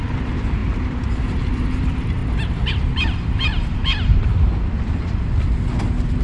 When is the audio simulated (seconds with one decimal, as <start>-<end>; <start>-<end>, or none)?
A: 0.0-2.2; 2.8-3.8; 5.8-6.2